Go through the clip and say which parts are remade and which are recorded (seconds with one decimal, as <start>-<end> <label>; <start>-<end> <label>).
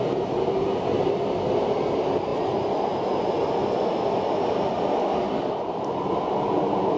0.0-7.0 recorded